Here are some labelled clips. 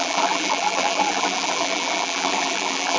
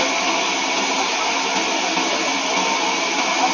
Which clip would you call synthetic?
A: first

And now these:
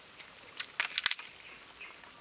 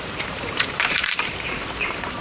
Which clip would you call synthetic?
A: second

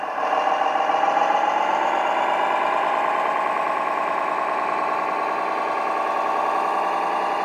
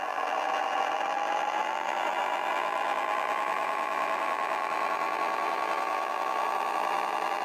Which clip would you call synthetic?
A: second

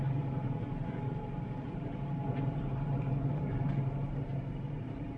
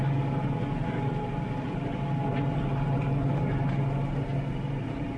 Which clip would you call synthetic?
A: first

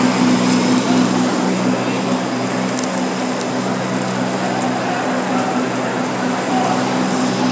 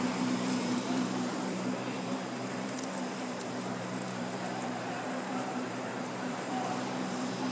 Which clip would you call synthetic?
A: second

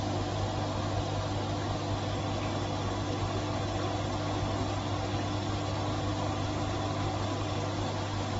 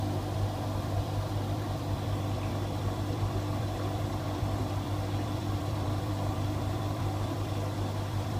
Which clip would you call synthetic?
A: second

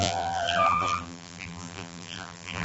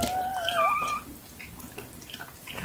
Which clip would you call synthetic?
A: first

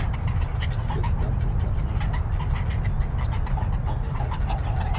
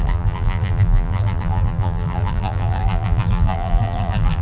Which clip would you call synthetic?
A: second